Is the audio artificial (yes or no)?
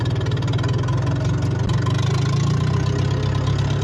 no